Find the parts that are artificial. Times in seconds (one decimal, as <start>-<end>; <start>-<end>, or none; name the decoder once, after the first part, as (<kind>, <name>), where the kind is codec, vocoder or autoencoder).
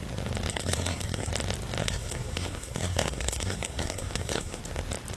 0.5-1.3 (codec, SNAC); 1.8-4.6